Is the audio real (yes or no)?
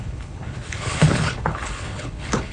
no